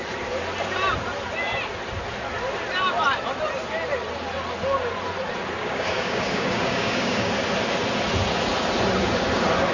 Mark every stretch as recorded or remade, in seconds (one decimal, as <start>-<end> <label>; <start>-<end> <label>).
0.0-5.6 recorded; 5.6-7.3 remade; 7.3-9.7 recorded